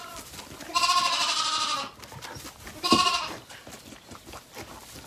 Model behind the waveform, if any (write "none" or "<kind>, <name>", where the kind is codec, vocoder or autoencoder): none